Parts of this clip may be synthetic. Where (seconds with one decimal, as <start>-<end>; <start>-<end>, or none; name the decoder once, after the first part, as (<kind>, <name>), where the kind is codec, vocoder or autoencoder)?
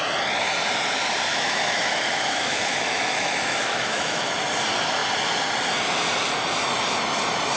1.3-4.3 (autoencoder, DAC-VAE)